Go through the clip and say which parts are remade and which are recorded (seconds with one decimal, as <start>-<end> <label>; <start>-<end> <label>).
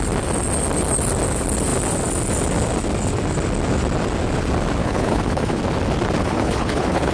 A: 0.0-4.8 recorded; 4.8-5.6 remade; 5.6-6.2 recorded; 6.2-7.1 remade